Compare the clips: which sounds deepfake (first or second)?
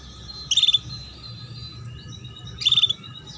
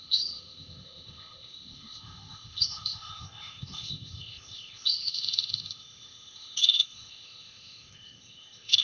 second